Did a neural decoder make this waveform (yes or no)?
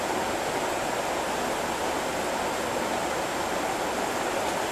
no